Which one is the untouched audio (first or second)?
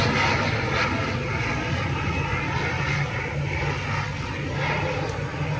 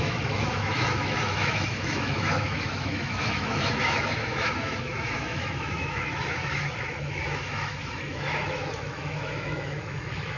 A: first